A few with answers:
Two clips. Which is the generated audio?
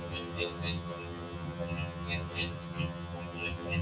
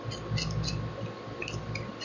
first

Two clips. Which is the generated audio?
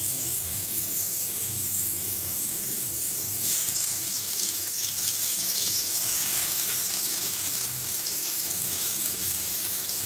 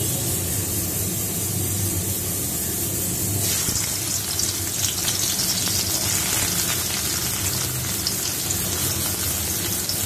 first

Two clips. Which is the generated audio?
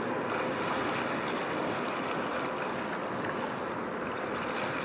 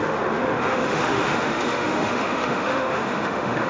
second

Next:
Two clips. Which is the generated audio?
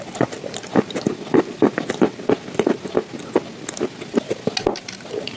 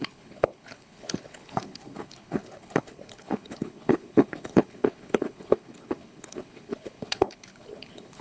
second